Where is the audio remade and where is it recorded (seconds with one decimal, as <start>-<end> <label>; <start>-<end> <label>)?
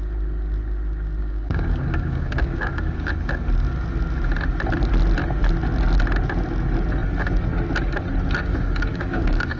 0.0-1.2 recorded; 1.2-3.1 remade; 3.1-8.5 recorded; 8.5-9.6 remade